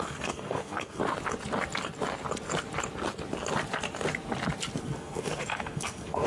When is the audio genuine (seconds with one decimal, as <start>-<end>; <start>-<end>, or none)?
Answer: 1.0-4.8